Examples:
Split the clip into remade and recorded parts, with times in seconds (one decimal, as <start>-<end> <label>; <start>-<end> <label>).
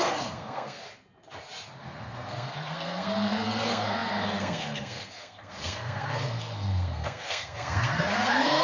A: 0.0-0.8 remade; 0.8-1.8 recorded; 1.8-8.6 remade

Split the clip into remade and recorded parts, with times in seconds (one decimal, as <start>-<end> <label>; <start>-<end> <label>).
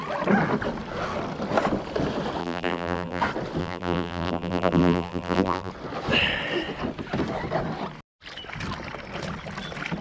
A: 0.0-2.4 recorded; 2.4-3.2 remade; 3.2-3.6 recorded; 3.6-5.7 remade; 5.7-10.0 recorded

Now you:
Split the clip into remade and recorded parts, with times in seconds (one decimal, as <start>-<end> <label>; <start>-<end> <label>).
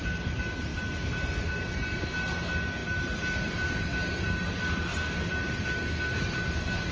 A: 0.0-6.9 recorded